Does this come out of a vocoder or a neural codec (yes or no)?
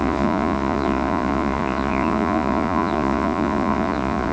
yes